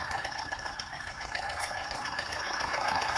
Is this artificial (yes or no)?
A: yes